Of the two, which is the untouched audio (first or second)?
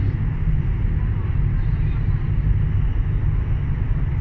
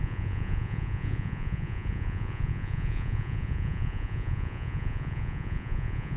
first